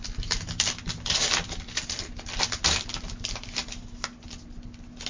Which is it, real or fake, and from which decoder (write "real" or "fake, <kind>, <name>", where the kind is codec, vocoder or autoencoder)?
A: real